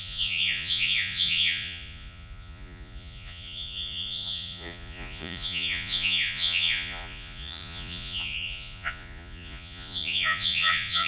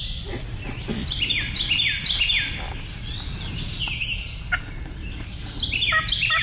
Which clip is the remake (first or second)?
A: first